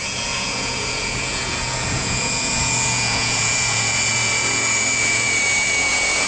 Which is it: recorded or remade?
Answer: remade